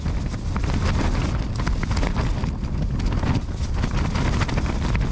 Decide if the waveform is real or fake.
real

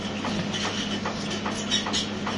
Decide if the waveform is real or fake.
real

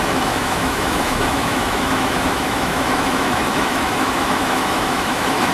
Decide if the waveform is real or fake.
fake